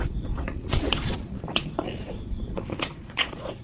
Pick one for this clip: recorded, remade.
remade